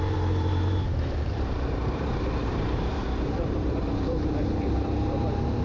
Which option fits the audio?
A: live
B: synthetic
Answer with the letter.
B